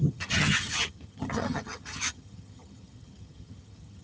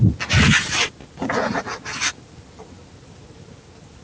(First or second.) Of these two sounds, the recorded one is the second